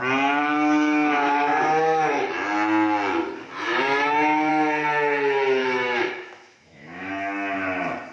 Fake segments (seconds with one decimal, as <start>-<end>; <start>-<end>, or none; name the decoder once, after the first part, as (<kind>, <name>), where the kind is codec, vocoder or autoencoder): 0.4-2.2 (autoencoder, DAC-VAE); 3.7-4.5; 5.6-7.1